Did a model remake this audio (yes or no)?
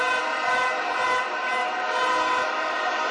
yes